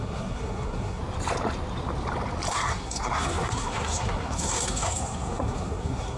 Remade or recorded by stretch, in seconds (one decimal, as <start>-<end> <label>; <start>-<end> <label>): 0.0-1.0 remade; 1.0-2.5 recorded; 2.5-6.2 remade